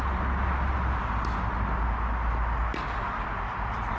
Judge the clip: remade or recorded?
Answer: recorded